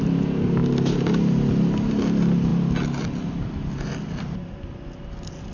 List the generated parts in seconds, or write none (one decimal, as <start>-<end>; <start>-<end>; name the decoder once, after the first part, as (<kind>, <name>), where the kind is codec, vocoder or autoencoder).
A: none

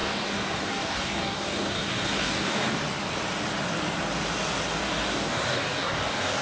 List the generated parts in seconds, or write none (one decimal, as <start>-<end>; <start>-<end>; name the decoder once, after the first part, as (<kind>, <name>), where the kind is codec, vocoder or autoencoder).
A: 0.0-2.8 (codec, DAC); 4.7-6.4

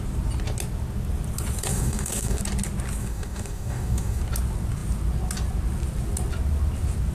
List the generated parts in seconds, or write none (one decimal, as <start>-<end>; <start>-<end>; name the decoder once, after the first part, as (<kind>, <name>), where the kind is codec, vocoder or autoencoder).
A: 1.7-2.4 (codec, DAC); 3.0-4.2

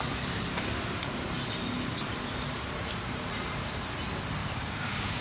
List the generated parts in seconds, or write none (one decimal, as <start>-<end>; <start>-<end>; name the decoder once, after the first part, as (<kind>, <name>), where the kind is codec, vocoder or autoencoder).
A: 4.4-5.2 (codec, DAC)

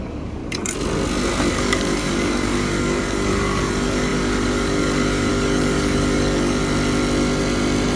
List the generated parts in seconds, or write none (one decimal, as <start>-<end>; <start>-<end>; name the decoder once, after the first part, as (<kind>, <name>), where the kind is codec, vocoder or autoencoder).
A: 0.0-0.4 (codec, DAC); 1.5-6.6

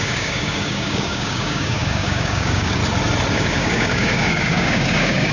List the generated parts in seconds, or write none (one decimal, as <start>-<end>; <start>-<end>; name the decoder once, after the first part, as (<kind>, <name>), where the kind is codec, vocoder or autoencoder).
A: 0.0-2.8 (codec, DAC); 3.3-5.3

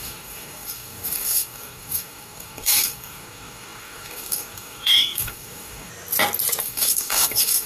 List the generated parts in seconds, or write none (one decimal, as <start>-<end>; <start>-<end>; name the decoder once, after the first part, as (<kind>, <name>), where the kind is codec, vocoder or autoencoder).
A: 0.0-5.9 (codec, DAC); 6.6-7.7